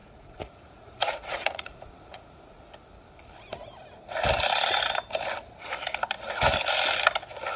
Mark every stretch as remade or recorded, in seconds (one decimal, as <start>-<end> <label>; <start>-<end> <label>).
0.0-2.7 remade; 2.7-7.6 recorded